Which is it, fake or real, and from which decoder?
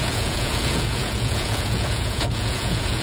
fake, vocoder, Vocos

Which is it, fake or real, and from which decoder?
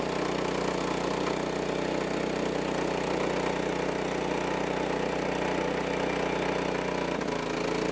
real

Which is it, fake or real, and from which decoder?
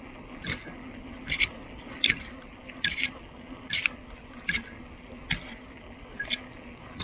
real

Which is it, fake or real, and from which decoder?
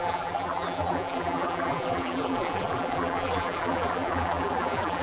fake, vocoder, BigVGAN v2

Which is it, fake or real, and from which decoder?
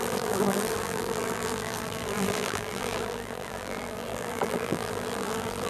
fake, vocoder, BigVGAN v2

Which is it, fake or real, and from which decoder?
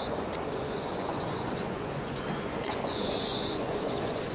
fake, vocoder, Vocos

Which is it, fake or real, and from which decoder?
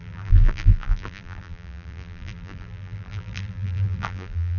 fake, vocoder, BigVGAN v2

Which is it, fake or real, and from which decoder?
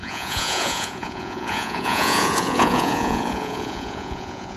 fake, vocoder, Vocos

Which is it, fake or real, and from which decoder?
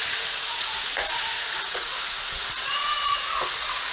fake, vocoder, Vocos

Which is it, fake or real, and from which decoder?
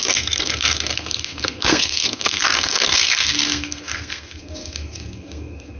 fake, codec, SNAC